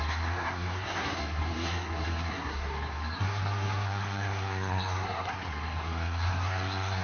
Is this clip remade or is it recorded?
remade